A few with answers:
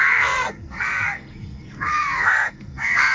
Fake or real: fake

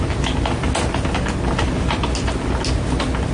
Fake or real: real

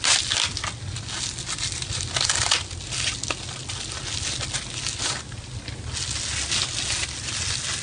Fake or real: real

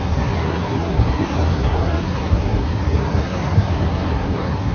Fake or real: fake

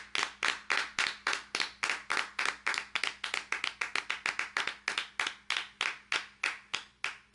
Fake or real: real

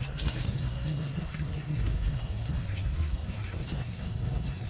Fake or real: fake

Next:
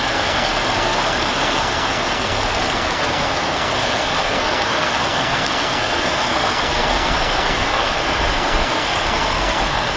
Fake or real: fake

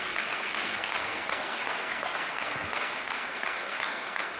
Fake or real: fake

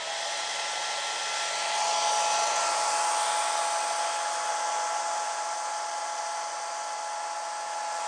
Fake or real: real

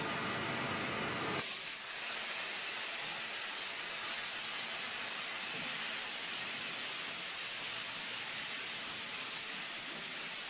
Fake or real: real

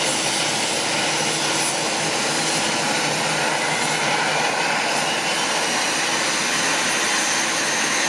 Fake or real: real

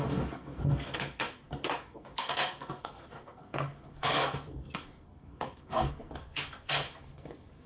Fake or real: fake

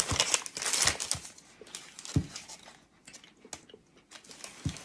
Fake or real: real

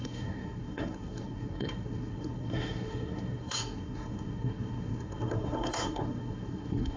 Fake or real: fake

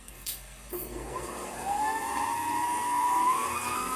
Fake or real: fake